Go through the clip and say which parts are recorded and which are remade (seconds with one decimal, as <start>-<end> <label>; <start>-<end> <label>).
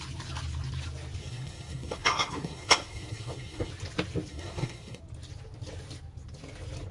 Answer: 0.0-1.2 recorded; 1.2-3.7 remade; 3.7-4.3 recorded; 4.3-5.0 remade; 5.0-6.9 recorded